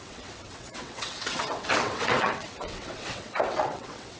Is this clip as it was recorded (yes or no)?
no